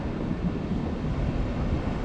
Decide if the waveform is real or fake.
real